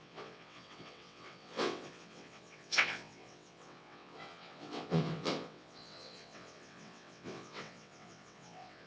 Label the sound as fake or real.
fake